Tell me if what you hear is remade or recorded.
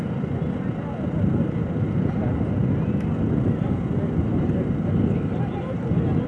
recorded